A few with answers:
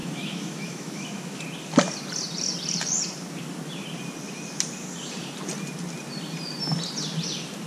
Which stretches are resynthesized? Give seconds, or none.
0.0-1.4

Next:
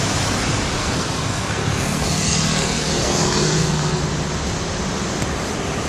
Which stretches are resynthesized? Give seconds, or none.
0.8-4.0

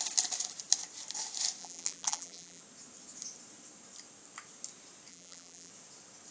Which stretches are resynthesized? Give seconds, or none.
1.6-2.6; 5.1-5.7